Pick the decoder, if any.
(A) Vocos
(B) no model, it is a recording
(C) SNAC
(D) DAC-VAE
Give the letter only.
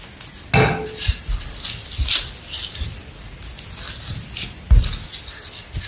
B